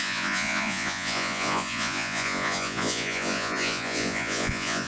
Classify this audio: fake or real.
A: fake